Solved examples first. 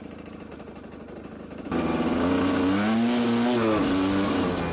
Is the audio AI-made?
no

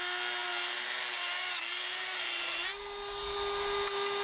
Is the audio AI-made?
no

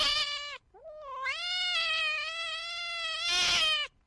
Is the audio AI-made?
no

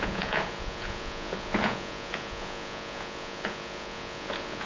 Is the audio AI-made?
yes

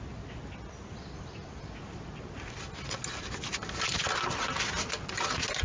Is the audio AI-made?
no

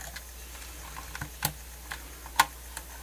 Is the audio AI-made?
no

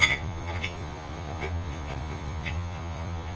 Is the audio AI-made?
yes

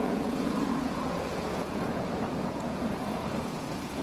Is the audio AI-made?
yes